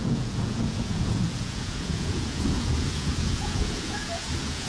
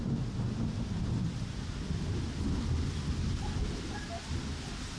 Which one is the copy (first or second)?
first